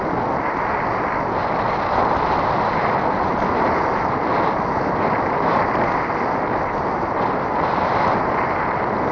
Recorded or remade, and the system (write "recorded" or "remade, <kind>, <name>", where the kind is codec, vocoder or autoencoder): recorded